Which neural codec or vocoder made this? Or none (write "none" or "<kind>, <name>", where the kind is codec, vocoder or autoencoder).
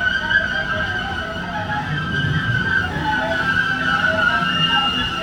none